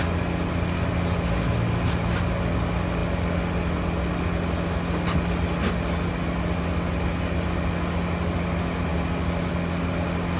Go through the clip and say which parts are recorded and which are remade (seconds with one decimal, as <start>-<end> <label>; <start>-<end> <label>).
0.0-10.4 recorded